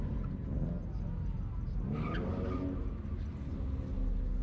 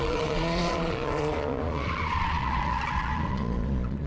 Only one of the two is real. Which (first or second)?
first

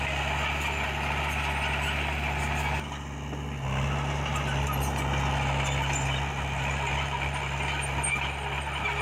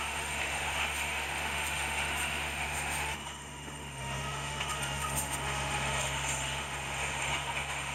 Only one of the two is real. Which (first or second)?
first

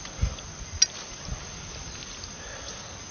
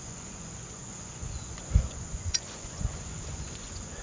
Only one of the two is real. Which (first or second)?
first